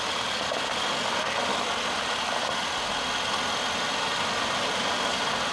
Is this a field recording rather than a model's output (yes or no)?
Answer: yes